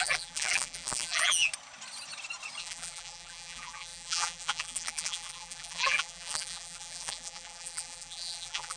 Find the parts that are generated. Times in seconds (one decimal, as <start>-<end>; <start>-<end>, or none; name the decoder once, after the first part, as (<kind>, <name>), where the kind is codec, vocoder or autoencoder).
0.0-1.5 (vocoder, BigVGAN v2); 2.6-8.8